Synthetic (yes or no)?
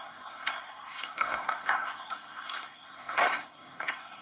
yes